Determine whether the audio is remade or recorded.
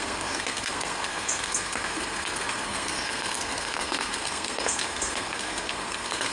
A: remade